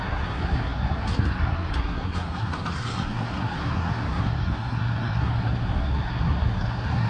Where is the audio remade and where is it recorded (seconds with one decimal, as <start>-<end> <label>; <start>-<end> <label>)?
0.0-7.1 remade